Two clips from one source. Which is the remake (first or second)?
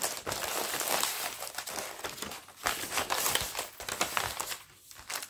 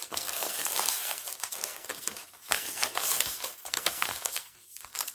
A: second